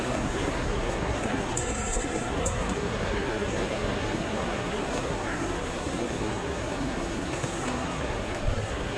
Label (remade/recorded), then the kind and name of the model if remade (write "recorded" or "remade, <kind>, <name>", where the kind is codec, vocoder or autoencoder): remade, codec, SNAC